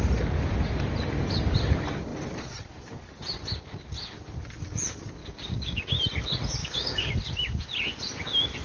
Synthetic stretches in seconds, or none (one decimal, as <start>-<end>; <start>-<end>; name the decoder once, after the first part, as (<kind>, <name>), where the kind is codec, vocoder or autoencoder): 5.2-5.8 (codec, DAC); 6.6-7.1